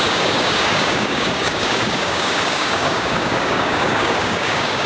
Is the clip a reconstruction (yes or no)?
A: yes